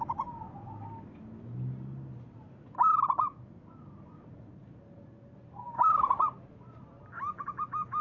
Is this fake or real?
real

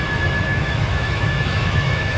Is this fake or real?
fake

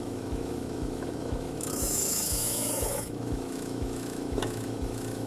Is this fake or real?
fake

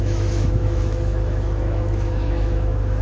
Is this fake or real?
fake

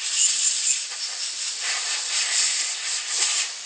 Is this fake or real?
real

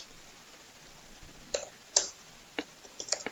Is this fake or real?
real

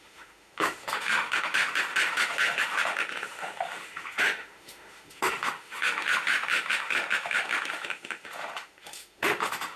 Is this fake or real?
fake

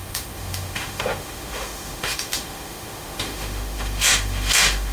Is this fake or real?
fake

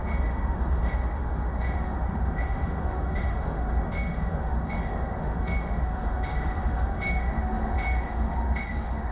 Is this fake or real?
fake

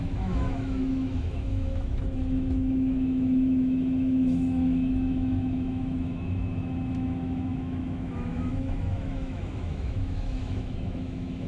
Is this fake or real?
fake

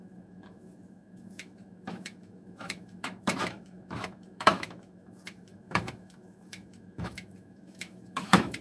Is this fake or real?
fake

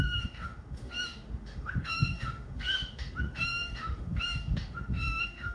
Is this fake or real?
fake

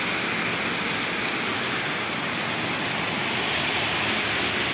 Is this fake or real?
real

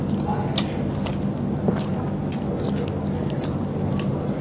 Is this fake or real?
real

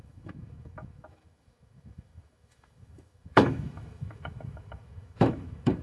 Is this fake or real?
fake